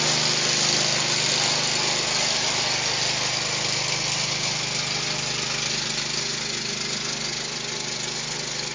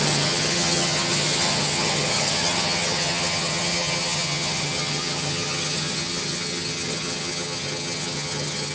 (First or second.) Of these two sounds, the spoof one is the second